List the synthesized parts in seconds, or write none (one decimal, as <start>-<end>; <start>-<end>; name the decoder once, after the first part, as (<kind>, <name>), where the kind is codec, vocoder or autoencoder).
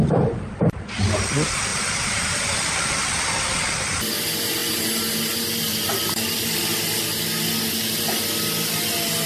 1.7-2.6 (vocoder, BigVGAN v2)